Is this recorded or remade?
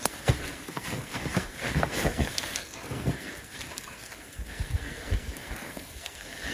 remade